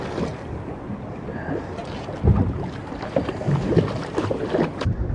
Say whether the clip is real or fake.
real